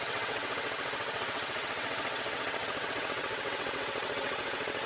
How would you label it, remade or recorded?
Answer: remade